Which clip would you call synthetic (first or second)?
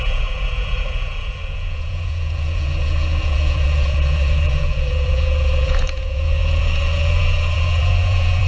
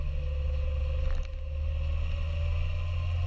first